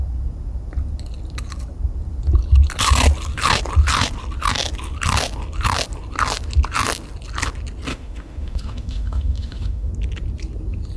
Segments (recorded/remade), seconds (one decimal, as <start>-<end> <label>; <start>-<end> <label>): 0.0-7.9 recorded; 7.9-9.9 remade; 9.9-11.0 recorded